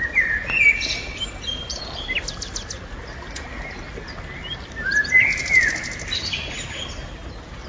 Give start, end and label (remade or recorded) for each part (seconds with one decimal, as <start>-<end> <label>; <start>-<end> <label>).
0.0-7.7 recorded